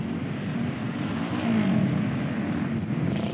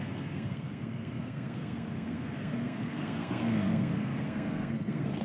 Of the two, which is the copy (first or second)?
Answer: second